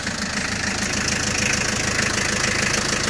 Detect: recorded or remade recorded